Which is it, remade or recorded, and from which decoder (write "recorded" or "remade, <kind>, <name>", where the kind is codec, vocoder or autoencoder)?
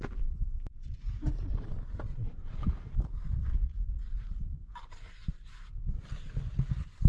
recorded